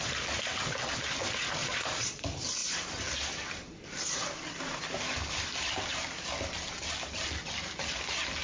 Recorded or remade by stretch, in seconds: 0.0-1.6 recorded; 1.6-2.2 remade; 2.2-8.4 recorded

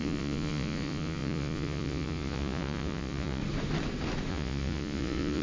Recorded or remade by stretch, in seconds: 0.0-3.4 remade; 3.4-4.3 recorded; 4.3-5.4 remade

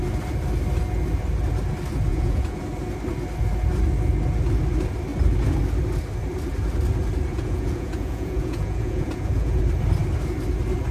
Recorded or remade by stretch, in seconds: 0.0-2.1 recorded; 2.1-2.6 remade; 2.6-7.3 recorded; 7.3-9.6 remade; 9.6-10.9 recorded

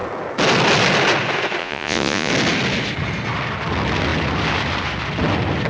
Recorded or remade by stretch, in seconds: 0.0-1.6 recorded; 1.6-2.3 remade; 2.3-5.7 recorded

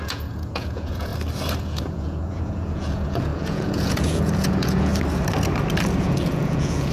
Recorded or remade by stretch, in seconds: 0.0-1.1 remade; 1.1-1.6 recorded; 1.6-4.9 remade; 4.9-6.0 recorded; 6.0-6.9 remade